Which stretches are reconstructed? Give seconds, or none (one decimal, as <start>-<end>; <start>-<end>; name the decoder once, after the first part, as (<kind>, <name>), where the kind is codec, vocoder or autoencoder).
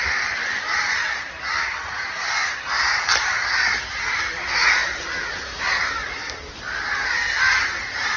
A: none